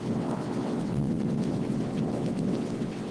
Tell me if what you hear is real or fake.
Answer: fake